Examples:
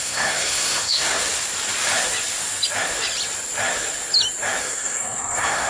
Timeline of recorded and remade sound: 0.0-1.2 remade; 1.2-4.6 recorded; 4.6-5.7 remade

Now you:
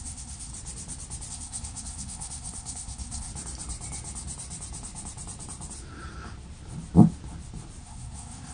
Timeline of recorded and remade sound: 0.0-0.5 remade; 0.5-1.3 recorded; 1.3-3.3 remade; 3.3-7.8 recorded; 7.8-8.5 remade